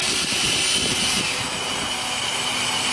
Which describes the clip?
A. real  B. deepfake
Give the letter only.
A